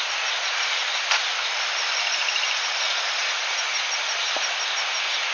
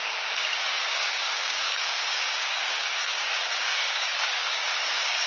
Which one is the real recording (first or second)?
first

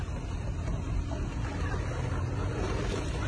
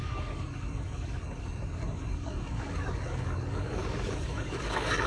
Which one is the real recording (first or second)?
first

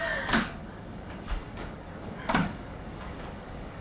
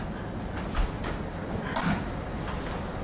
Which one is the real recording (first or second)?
second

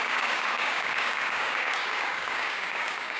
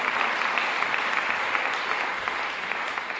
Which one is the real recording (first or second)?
second